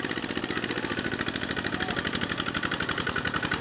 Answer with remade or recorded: recorded